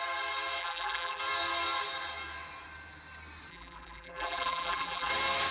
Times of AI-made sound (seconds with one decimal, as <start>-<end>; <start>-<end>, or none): 0.6-1.2; 3.5-5.1

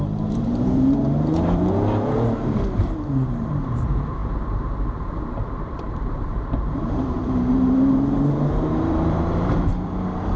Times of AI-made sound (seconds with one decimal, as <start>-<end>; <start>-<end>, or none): 0.0-10.4

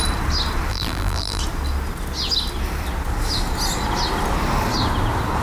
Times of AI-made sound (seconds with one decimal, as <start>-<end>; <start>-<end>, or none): 0.7-1.4

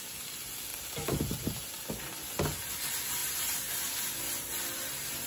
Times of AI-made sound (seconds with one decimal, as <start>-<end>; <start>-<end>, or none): 0.7-1.7

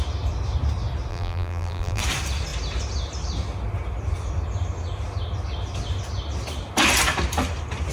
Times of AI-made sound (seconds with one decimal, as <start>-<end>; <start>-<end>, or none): 1.1-2.0